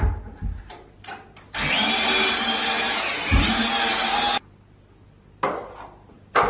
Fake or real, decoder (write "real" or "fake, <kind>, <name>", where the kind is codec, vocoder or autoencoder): real